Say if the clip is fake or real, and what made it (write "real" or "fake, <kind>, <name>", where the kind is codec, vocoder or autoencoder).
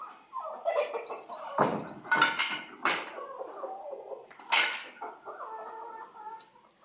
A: real